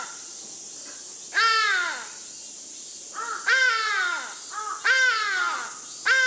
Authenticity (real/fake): real